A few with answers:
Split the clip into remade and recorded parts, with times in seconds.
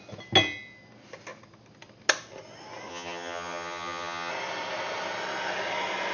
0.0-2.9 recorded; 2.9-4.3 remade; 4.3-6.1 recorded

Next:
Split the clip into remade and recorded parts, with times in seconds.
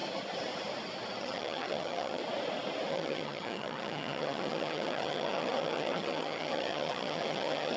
0.0-1.2 recorded; 1.2-2.2 remade; 2.2-2.9 recorded; 2.9-7.8 remade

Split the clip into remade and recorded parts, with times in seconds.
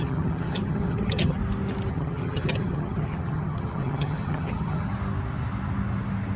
0.0-1.4 remade; 1.4-1.9 recorded; 1.9-4.9 remade; 4.9-6.4 recorded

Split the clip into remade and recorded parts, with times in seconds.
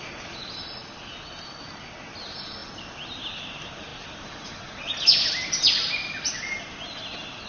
0.0-7.5 recorded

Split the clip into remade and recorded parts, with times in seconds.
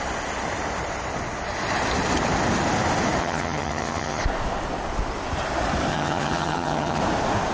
0.0-3.2 recorded; 3.2-4.2 remade; 4.2-5.9 recorded; 5.9-7.0 remade; 7.0-7.5 recorded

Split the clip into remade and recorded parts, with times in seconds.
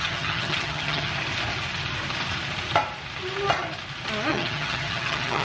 0.0-1.1 remade; 1.1-4.3 recorded; 4.3-5.4 remade